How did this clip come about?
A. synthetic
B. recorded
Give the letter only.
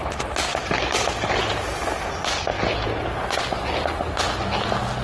B